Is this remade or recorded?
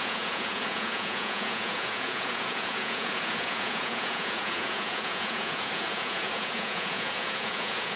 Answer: remade